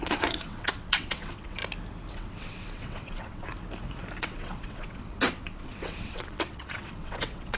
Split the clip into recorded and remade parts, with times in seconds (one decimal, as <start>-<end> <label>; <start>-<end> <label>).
0.0-1.6 remade; 1.6-2.1 recorded; 2.1-3.5 remade; 3.5-4.2 recorded; 4.2-7.6 remade